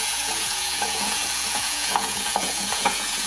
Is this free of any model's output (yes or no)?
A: no